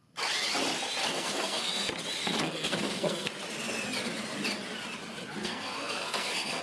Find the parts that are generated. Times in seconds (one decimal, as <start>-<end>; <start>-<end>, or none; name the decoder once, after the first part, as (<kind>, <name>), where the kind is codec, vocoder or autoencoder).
1.0-1.7 (codec, SNAC); 2.2-3.3; 5.4-6.6